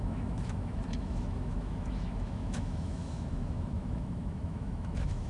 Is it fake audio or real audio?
fake